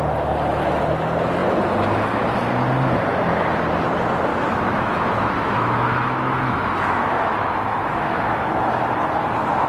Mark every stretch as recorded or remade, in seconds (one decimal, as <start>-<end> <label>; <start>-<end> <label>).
0.0-4.3 recorded; 4.3-8.6 remade; 8.6-9.7 recorded